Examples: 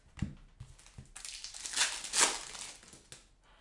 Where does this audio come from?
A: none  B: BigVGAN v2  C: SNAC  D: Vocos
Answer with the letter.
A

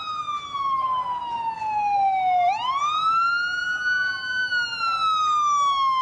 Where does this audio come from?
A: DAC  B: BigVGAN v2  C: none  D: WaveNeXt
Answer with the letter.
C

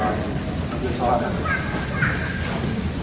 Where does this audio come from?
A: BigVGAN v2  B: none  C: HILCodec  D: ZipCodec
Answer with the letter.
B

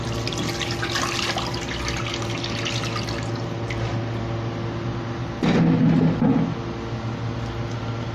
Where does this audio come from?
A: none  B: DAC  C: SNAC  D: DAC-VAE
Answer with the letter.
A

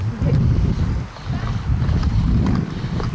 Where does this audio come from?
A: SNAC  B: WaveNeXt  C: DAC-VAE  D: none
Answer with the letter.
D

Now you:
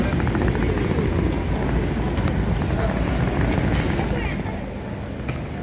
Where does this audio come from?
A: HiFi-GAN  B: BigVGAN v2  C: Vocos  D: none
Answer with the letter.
D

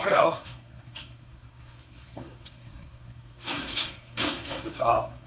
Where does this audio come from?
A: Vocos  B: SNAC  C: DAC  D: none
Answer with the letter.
B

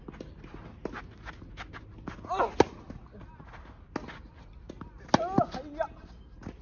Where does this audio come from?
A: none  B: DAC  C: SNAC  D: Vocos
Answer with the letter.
A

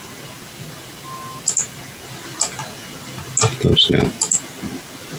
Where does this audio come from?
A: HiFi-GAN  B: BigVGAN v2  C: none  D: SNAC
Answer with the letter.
C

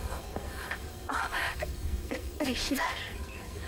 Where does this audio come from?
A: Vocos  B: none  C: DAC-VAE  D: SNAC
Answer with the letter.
D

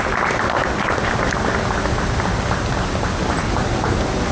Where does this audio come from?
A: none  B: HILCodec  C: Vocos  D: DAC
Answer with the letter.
A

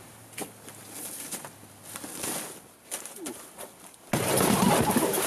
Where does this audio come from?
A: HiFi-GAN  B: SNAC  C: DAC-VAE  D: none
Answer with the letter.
D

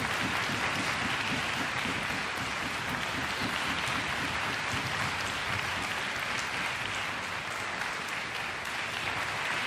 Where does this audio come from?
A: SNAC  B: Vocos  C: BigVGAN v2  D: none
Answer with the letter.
D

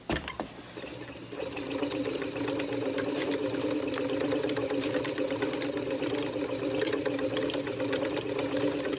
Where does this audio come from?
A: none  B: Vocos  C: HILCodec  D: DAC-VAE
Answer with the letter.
A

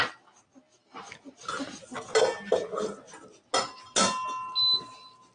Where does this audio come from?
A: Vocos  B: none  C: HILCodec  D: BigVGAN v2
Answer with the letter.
B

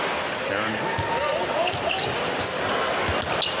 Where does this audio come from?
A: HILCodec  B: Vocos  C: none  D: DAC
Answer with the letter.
C